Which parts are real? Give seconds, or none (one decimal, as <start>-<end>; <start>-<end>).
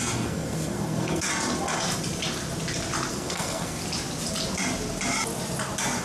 1.3-3.1; 3.8-6.0